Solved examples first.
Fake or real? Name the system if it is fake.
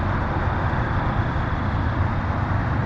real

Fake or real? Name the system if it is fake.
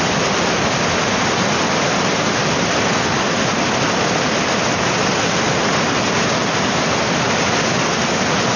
real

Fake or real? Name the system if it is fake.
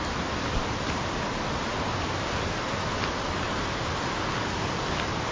real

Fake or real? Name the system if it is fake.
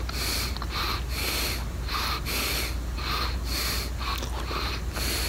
real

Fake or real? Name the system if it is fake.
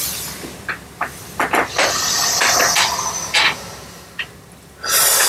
real